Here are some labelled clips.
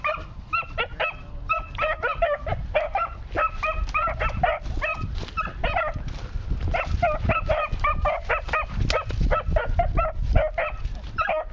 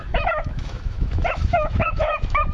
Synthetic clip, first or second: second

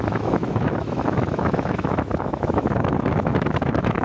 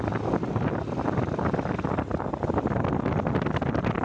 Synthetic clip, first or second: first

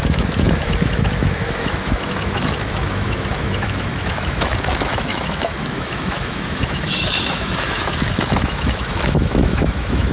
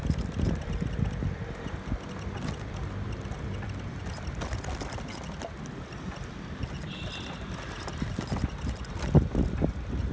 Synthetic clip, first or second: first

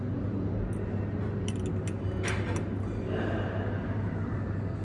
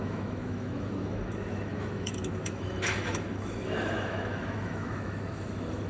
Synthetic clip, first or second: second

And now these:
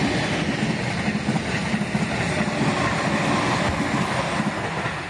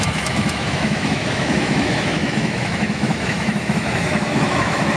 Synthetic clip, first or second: second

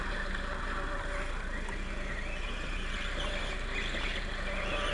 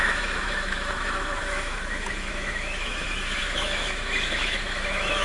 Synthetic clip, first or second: second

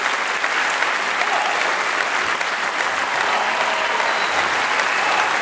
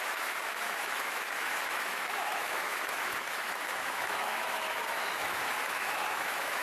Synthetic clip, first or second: second